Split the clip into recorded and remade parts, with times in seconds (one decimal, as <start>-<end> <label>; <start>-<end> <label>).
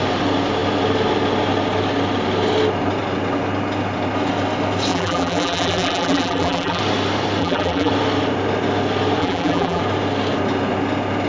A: 0.0-4.9 recorded; 4.9-6.8 remade; 6.8-7.4 recorded; 7.4-7.9 remade; 7.9-9.2 recorded; 9.2-9.8 remade; 9.8-11.3 recorded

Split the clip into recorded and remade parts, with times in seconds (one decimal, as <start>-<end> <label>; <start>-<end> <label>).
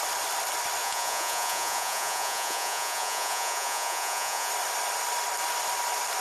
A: 0.0-0.8 recorded; 0.8-4.5 remade; 4.5-6.2 recorded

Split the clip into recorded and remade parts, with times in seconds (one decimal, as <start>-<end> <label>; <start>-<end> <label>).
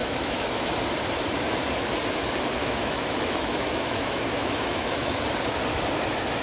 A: 0.0-0.8 remade; 0.8-2.6 recorded; 2.6-5.2 remade; 5.2-6.4 recorded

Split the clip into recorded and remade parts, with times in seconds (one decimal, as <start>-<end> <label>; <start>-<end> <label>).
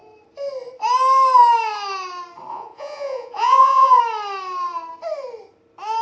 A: 0.0-2.5 recorded; 2.5-4.0 remade; 4.0-6.0 recorded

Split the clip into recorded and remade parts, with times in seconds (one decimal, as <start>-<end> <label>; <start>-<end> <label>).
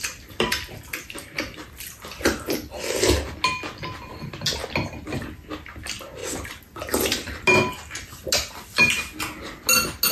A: 0.0-10.1 recorded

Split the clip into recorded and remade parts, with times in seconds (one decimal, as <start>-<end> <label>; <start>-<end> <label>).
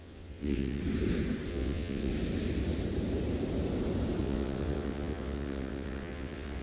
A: 0.0-0.8 remade; 0.8-1.5 recorded; 1.5-2.1 remade; 2.1-4.2 recorded; 4.2-6.6 remade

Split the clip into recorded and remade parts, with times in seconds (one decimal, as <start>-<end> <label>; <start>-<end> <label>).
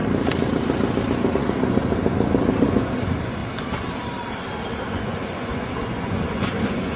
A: 0.0-1.3 recorded; 1.3-1.8 remade; 1.8-2.6 recorded; 2.6-3.4 remade; 3.4-4.9 recorded; 4.9-7.0 remade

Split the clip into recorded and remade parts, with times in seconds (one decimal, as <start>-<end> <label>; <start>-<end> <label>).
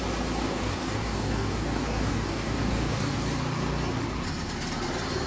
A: 0.0-0.4 recorded; 0.4-3.2 remade; 3.2-5.3 recorded